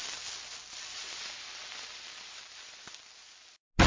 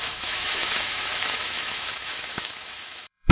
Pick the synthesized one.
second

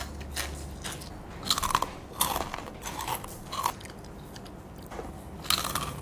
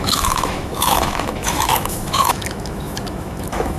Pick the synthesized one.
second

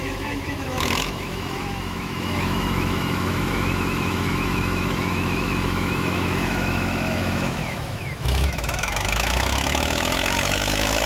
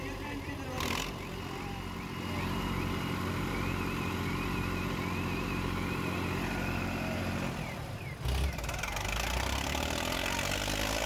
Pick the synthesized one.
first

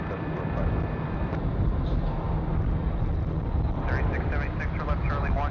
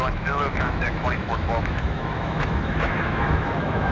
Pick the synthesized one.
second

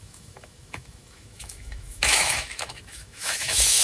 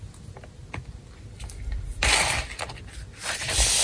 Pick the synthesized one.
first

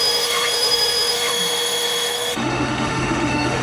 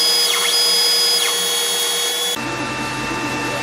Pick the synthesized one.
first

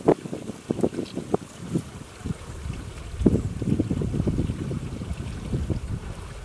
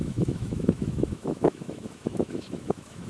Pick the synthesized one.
second